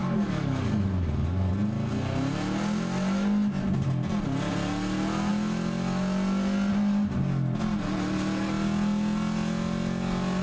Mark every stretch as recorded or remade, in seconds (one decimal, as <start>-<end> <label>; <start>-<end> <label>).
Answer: 0.0-1.5 remade; 1.5-10.4 recorded